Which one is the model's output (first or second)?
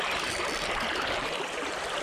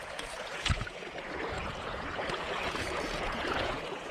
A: second